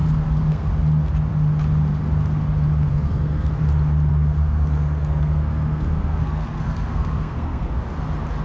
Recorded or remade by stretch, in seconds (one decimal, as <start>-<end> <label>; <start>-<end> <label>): 0.0-0.7 remade; 0.7-2.9 recorded; 2.9-3.6 remade; 3.6-4.1 recorded; 4.1-7.8 remade; 7.8-8.4 recorded